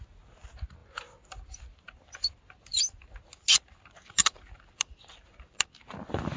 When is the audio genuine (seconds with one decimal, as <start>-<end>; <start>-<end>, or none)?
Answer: 0.0-0.8; 1.5-6.4